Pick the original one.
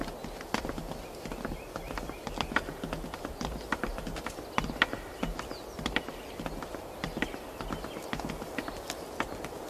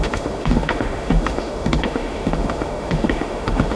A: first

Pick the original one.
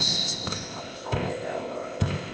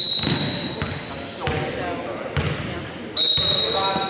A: second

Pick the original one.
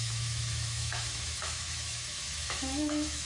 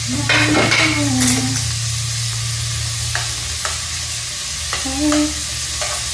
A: second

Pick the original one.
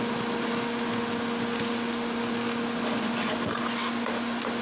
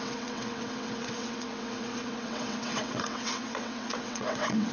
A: first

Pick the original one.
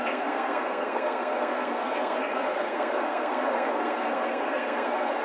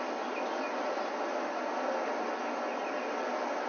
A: second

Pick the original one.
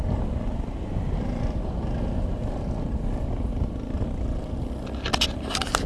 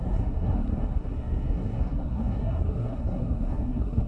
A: first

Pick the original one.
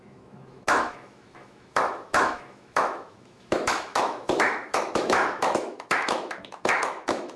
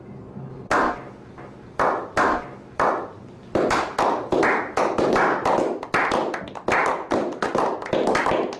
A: second